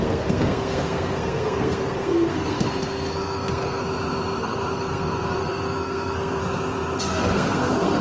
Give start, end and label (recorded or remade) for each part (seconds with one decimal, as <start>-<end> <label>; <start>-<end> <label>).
0.0-3.8 remade; 3.8-4.4 recorded; 4.4-6.4 remade; 6.4-7.0 recorded; 7.0-8.0 remade